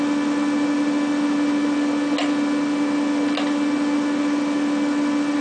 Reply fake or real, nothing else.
real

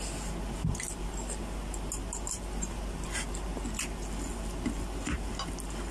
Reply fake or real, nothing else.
real